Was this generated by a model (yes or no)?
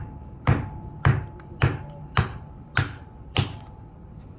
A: yes